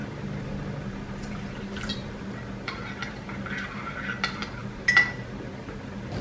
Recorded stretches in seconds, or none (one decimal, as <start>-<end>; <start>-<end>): 0.0-6.2